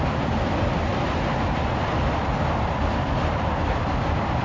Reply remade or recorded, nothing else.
recorded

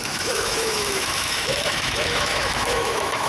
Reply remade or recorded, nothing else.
remade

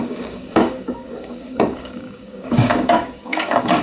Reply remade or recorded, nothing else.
remade